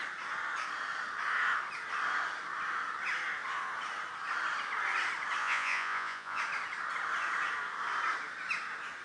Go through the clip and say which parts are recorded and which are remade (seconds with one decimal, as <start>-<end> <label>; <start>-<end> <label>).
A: 0.0-5.4 recorded; 5.4-6.4 remade; 6.4-9.0 recorded